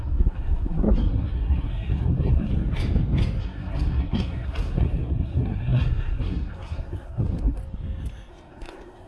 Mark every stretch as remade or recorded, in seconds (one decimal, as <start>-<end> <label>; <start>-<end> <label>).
0.0-2.5 remade; 2.5-3.4 recorded; 3.4-7.6 remade; 7.6-8.3 recorded; 8.3-9.1 remade